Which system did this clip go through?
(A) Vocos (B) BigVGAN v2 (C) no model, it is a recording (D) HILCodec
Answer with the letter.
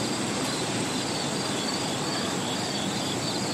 B